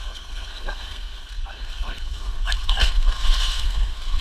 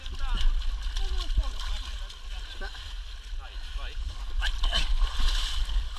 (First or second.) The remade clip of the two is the first